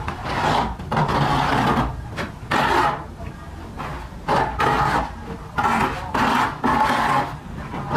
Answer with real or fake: real